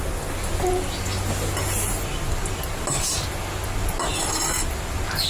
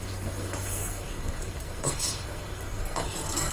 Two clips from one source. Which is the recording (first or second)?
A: first